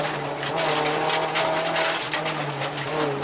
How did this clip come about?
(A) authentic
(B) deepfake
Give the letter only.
A